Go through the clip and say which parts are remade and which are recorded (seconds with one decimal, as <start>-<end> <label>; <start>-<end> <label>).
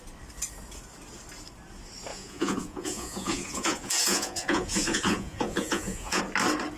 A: 0.0-2.1 recorded; 2.1-6.2 remade; 6.2-6.8 recorded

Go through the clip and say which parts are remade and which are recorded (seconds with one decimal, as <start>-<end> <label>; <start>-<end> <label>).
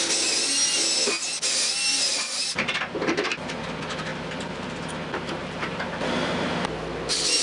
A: 0.0-2.1 recorded; 2.1-3.6 remade; 3.6-4.1 recorded; 4.1-4.9 remade; 4.9-5.4 recorded; 5.4-6.1 remade; 6.1-7.4 recorded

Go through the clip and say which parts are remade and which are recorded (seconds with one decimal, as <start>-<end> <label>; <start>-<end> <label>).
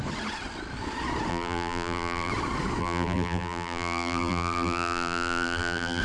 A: 0.0-1.3 recorded; 1.3-2.3 remade; 2.3-2.8 recorded; 2.8-6.0 remade